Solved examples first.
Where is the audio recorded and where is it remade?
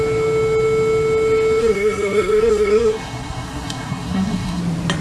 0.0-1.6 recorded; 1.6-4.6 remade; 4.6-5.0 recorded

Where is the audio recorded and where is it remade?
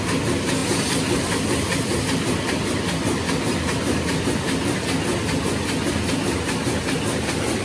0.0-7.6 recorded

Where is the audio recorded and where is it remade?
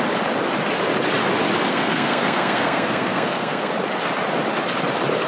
0.0-1.7 recorded; 1.7-3.7 remade; 3.7-5.3 recorded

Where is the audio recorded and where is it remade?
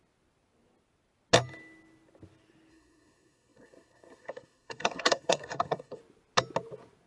0.0-2.7 recorded; 2.7-6.0 remade; 6.0-7.1 recorded